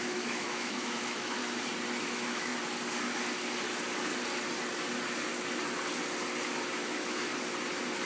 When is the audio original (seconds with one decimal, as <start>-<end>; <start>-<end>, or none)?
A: 1.4-2.0; 2.5-6.7; 7.3-8.1